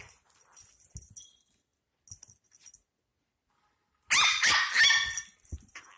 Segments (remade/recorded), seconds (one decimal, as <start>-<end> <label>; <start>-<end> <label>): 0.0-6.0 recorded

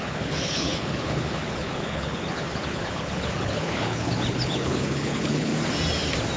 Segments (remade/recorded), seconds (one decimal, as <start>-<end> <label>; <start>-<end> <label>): 0.0-5.5 remade; 5.5-6.4 recorded

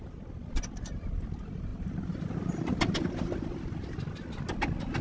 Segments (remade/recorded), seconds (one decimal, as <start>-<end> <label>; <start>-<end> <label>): 0.0-5.0 recorded

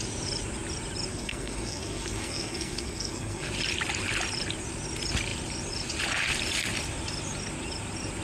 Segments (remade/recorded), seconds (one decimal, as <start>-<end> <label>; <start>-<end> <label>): 0.0-1.1 recorded; 1.1-3.5 remade; 3.5-8.2 recorded

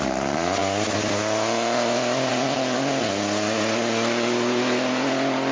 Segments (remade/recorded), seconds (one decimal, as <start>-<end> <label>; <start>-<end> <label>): 0.0-5.5 recorded